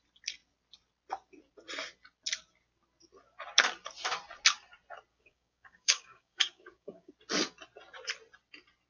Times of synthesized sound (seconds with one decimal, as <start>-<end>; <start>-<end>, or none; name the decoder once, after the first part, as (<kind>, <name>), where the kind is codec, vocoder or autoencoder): 5.1-7.1 (codec, DAC)